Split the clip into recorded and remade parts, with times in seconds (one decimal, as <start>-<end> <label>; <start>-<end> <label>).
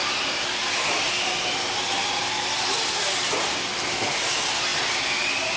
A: 0.0-5.6 recorded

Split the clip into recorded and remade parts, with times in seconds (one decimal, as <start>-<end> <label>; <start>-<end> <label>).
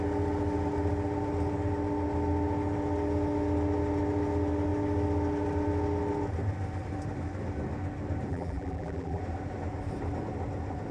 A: 0.0-8.3 recorded; 8.3-9.2 remade; 9.2-10.9 recorded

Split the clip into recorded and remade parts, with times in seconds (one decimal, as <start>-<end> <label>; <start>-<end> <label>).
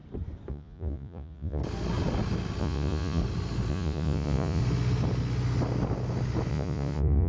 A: 0.0-0.5 recorded; 0.5-1.6 remade; 1.6-2.6 recorded; 2.6-3.2 remade; 3.2-3.7 recorded; 3.7-4.6 remade; 4.6-6.5 recorded; 6.5-7.3 remade